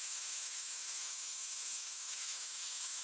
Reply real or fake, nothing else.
fake